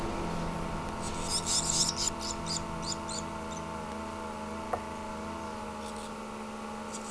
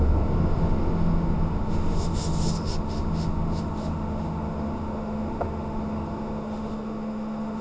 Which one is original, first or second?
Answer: first